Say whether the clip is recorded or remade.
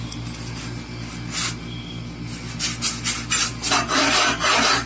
recorded